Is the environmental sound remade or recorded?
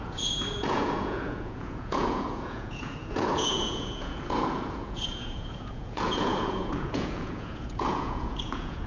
remade